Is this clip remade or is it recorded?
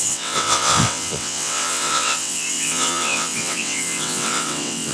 remade